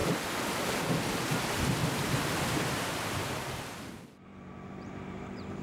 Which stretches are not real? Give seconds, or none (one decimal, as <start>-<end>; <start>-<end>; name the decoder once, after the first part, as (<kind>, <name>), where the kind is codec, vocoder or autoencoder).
1.8-5.6 (vocoder, BigVGAN v2)